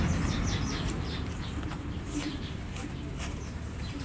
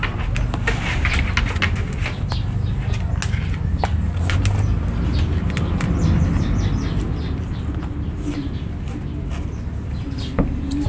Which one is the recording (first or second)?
second